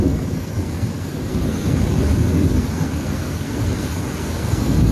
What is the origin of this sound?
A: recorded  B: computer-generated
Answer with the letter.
B